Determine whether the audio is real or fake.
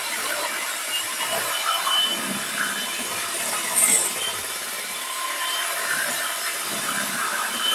fake